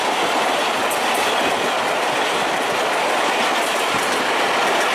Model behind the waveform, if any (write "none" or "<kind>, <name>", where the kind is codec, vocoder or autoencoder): none